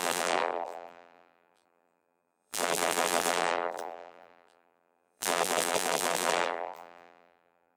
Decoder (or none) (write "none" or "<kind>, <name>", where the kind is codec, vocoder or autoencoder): vocoder, BigVGAN v2